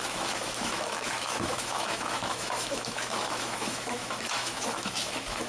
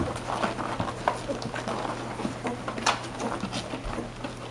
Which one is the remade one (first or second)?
first